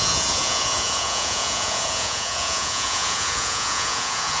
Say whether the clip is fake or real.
fake